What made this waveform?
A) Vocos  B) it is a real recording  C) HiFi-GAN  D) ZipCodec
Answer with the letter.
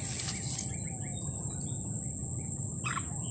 B